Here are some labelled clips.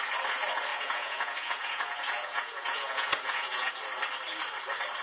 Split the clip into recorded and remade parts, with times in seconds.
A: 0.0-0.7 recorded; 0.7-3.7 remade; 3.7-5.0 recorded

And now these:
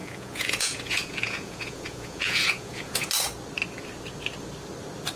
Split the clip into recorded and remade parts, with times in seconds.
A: 0.0-3.1 remade; 3.1-5.2 recorded

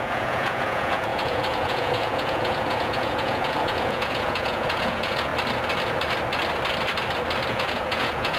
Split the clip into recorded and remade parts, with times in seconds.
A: 0.0-5.3 remade; 5.3-7.5 recorded; 7.5-8.4 remade

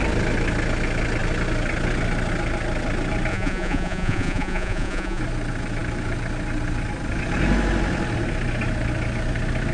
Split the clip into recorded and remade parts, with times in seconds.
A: 0.0-3.3 recorded; 3.3-5.2 remade; 5.2-9.7 recorded

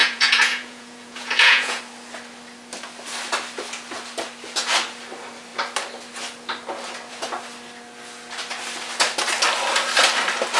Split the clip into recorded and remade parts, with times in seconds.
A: 0.0-1.8 remade; 1.8-10.6 recorded

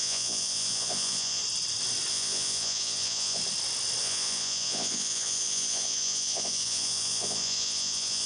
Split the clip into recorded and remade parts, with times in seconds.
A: 0.0-1.4 remade; 1.4-2.1 recorded; 2.1-3.4 remade; 3.4-4.0 recorded; 4.0-8.3 remade

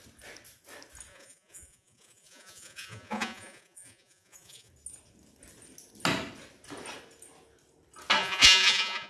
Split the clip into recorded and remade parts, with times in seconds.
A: 0.0-1.1 recorded; 1.1-4.7 remade; 4.7-8.2 recorded; 8.2-9.1 remade

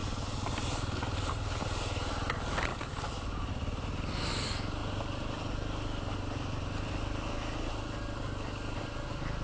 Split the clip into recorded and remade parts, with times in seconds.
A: 0.0-9.4 recorded